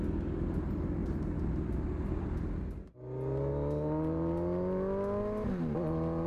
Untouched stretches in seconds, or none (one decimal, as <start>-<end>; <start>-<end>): 0.0-6.3